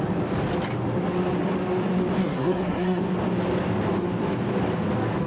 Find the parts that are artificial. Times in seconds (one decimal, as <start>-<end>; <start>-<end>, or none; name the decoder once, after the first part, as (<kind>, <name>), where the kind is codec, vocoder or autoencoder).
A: 2.2-3.0 (codec, SNAC)